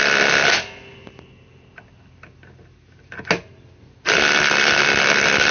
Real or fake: real